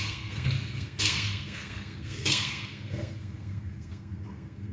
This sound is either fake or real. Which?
fake